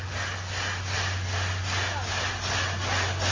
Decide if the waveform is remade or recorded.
recorded